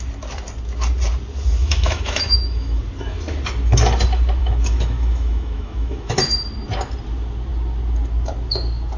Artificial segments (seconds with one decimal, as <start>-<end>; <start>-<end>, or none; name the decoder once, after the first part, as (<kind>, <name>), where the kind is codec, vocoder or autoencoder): 1.6-2.8 (autoencoder, DAC-VAE); 4.4-6.2